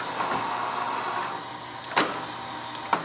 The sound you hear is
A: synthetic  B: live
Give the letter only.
B